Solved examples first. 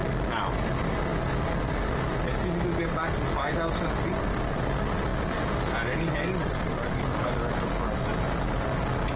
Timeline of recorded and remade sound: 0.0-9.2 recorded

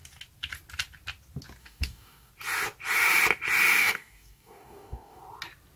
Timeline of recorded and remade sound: 0.0-1.6 recorded; 1.6-2.3 remade; 2.3-3.8 recorded; 3.8-5.2 remade; 5.2-5.8 recorded

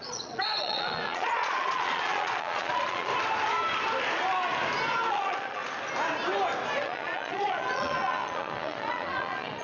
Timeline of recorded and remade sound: 0.0-3.1 remade; 3.1-5.1 recorded; 5.1-5.6 remade; 5.6-6.8 recorded; 6.8-9.6 remade

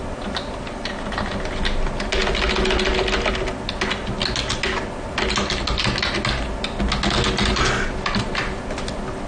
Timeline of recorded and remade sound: 0.0-9.3 recorded

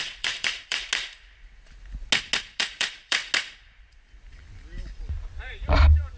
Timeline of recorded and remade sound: 0.0-0.9 remade; 0.9-2.6 recorded; 2.6-3.2 remade; 3.2-3.8 recorded; 3.8-6.2 remade

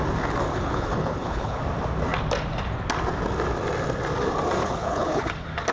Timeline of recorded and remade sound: 0.0-0.5 recorded; 0.5-1.6 remade; 1.6-4.6 recorded; 4.6-5.3 remade; 5.3-5.7 recorded

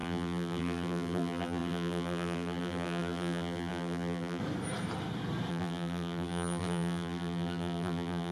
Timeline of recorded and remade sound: 0.0-4.4 remade; 4.4-5.5 recorded; 5.5-8.3 remade